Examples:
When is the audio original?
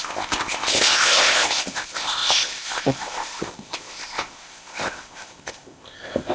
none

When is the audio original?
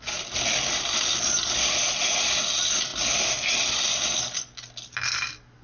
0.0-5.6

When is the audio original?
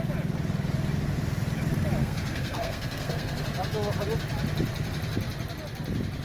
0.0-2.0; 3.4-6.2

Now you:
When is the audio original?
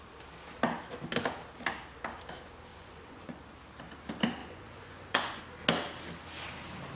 0.0-2.7; 3.4-4.4; 5.4-7.0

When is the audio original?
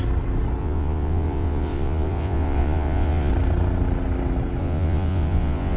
0.0-0.6; 3.3-4.6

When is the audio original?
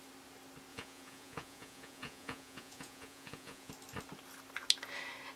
0.0-0.7; 3.7-5.4